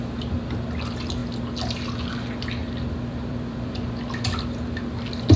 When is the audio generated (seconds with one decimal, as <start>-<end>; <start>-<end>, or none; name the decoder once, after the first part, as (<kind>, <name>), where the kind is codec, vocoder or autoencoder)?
2.6-3.7 (vocoder, BigVGAN v2)

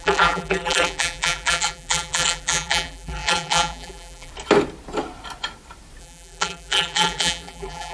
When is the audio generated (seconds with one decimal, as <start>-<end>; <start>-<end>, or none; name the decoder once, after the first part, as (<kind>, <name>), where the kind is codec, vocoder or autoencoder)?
0.0-4.3 (vocoder, BigVGAN v2); 6.0-7.9

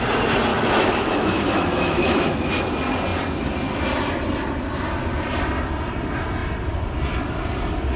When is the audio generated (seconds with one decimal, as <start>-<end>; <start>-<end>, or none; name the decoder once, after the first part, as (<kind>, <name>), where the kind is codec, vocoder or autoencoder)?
0.5-2.5 (autoencoder, DAC-VAE)